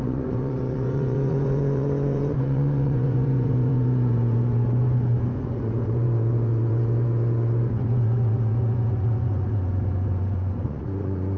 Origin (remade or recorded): remade